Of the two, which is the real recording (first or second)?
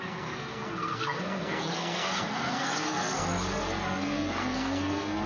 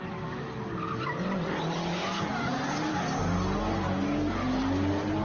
second